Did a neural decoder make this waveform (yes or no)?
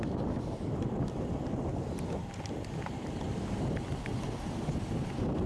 no